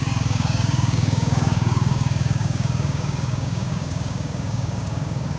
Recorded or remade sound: remade